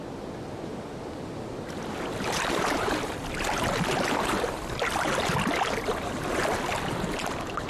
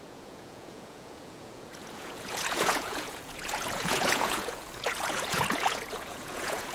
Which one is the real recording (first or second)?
first